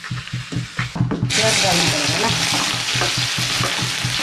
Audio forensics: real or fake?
real